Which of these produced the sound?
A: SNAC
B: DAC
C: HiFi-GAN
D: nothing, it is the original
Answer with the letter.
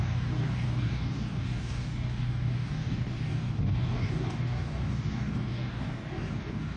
B